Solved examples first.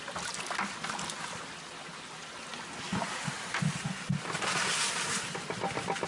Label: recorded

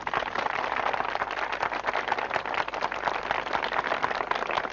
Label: recorded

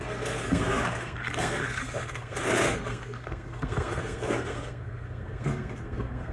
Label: remade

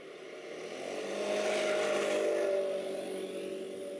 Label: recorded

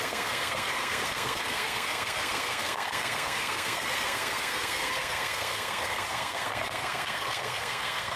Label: remade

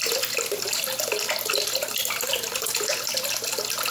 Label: recorded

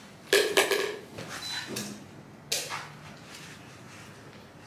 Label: recorded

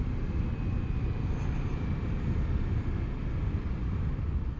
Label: recorded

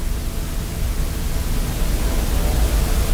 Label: recorded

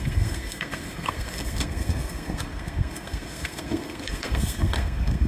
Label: remade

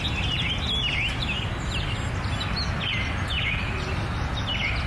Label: recorded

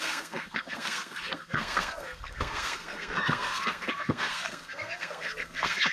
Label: remade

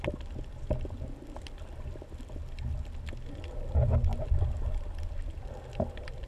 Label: recorded